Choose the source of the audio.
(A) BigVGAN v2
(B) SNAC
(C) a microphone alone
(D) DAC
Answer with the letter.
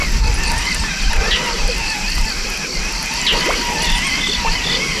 C